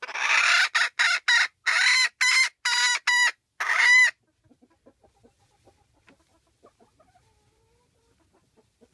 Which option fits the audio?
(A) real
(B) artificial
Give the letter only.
A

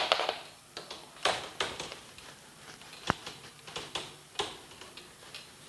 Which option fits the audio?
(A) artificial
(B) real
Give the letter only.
B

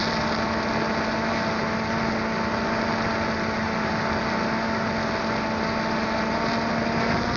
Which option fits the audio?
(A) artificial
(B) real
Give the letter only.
B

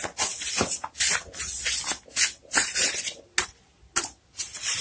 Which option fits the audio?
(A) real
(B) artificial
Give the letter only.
A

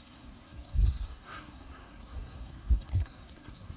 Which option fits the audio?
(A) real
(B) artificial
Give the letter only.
B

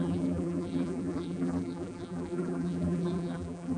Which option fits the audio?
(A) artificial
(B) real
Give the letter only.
A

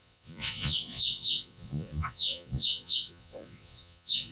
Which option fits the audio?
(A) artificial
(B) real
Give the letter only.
A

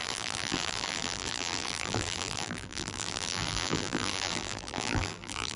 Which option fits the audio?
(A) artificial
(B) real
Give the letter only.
A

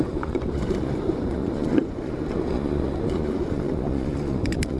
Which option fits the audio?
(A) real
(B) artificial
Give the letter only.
B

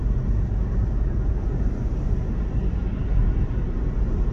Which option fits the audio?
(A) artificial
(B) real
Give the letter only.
B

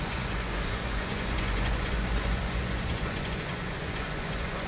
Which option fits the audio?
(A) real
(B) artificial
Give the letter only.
B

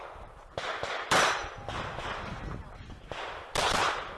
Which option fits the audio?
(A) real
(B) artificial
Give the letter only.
A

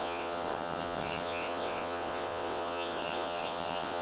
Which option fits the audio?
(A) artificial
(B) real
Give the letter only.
A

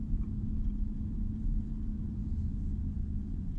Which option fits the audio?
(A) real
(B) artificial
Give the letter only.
B